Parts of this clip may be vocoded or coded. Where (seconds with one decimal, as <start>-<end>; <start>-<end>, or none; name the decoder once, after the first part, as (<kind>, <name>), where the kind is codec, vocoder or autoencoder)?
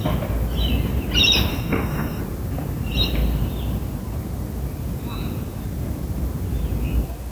1.5-2.2 (codec, DAC)